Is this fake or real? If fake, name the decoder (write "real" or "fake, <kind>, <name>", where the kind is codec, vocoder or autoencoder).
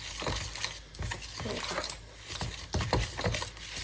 real